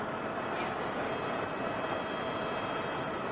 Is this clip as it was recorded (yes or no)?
yes